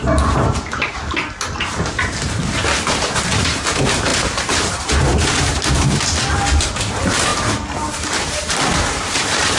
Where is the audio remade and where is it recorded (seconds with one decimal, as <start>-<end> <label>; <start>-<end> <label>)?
0.0-5.6 remade; 5.6-6.6 recorded; 6.6-9.6 remade